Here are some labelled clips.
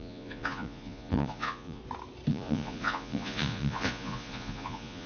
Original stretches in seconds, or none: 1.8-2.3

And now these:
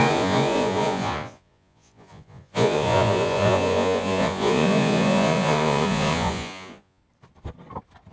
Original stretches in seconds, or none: 7.0-8.1

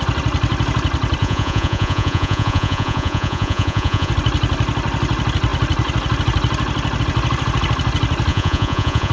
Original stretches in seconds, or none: 0.0-1.2; 4.1-8.3

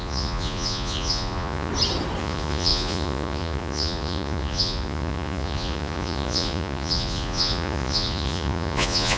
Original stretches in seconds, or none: 1.7-2.2

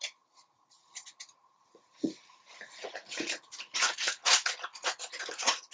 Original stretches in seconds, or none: none